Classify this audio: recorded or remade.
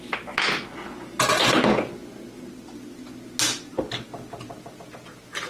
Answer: recorded